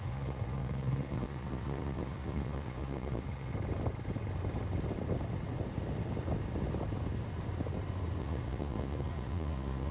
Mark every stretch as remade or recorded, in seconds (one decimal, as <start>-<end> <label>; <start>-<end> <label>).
0.0-3.5 remade; 3.5-8.2 recorded; 8.2-9.9 remade